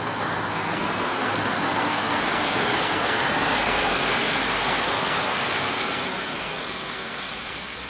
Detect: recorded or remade remade